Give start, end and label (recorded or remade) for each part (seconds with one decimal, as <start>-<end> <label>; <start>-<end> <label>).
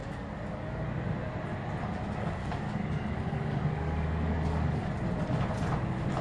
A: 0.0-0.8 remade; 0.8-2.4 recorded; 2.4-4.9 remade; 4.9-6.2 recorded